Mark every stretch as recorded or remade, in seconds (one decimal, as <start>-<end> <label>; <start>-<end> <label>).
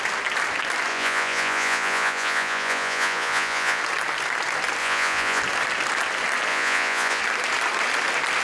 0.0-0.9 recorded; 0.9-3.8 remade; 3.8-4.8 recorded; 4.8-5.4 remade; 5.4-6.5 recorded; 6.5-7.2 remade; 7.2-8.4 recorded